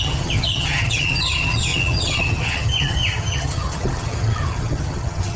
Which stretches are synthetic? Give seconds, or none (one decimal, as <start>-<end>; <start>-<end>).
0.0-5.4